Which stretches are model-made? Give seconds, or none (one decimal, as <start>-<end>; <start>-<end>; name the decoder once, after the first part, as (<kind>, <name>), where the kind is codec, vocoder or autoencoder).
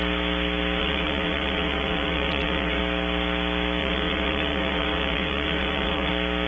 0.8-2.8 (vocoder, WaveNeXt); 3.8-6.1